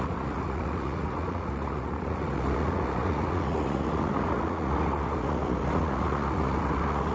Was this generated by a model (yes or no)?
yes